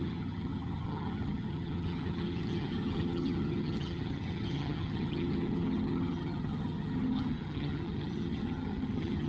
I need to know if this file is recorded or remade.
remade